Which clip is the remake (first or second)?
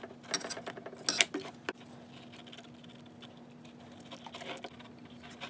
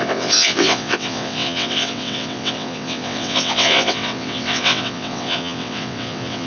second